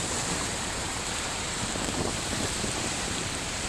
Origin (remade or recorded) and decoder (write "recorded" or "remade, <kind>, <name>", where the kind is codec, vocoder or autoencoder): remade, vocoder, BigVGAN v2